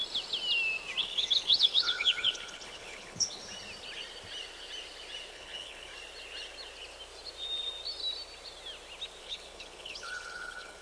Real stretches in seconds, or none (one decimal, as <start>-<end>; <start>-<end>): 0.0-1.0; 3.4-5.3; 5.9-9.2